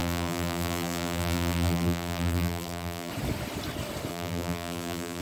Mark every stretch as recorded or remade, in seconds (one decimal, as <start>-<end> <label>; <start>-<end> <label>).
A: 0.0-3.1 remade; 3.1-4.1 recorded; 4.1-5.2 remade